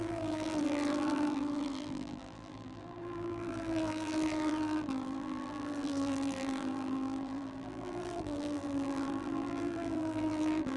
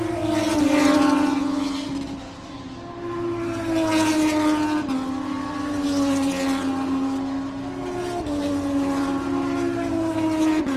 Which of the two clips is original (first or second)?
second